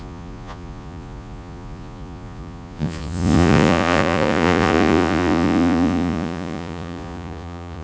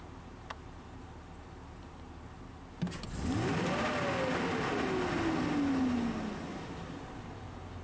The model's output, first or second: first